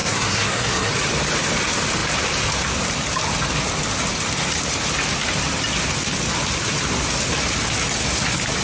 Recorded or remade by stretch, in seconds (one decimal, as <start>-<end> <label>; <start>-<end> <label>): 0.0-0.9 remade; 0.9-8.6 recorded